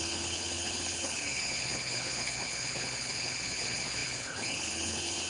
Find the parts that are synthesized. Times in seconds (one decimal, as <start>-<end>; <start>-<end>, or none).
0.0-5.3